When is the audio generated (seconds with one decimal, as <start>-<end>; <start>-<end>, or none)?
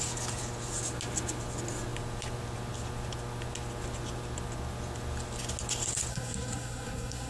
6.1-7.3